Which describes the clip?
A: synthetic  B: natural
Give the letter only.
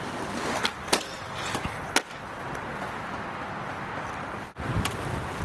B